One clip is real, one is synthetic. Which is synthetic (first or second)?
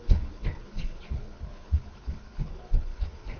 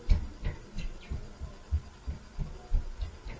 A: first